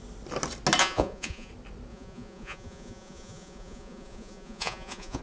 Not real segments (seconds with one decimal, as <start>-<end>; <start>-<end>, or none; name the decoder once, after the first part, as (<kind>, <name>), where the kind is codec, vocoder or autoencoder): 0.8-1.5 (vocoder, Vocos); 1.9-5.2